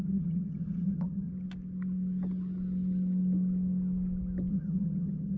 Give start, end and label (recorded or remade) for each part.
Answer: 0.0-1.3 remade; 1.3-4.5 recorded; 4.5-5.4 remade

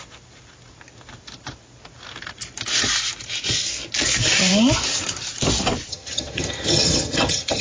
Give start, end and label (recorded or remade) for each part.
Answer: 0.0-5.9 recorded; 5.9-7.6 remade

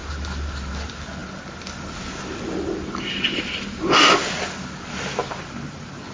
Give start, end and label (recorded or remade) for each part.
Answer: 0.0-6.1 recorded

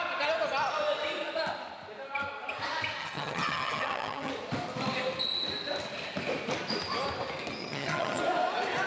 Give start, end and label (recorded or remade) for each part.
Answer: 0.0-3.0 recorded; 3.0-4.3 remade; 4.3-7.6 recorded; 7.6-8.2 remade; 8.2-8.9 recorded

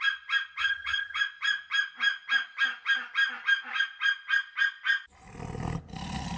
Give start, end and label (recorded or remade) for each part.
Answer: 0.0-0.6 recorded; 0.6-1.2 remade; 1.2-6.4 recorded

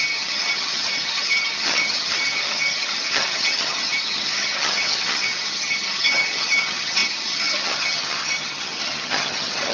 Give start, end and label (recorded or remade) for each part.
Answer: 0.0-9.7 remade